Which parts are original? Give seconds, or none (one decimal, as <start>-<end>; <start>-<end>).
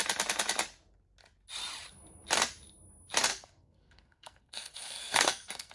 0.0-3.3